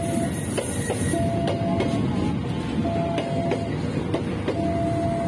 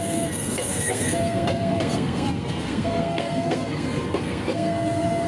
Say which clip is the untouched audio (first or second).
first